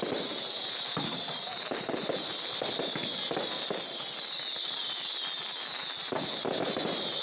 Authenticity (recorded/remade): recorded